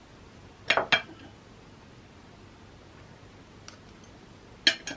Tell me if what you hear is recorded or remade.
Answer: recorded